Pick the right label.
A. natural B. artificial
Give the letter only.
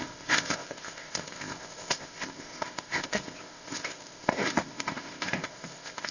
B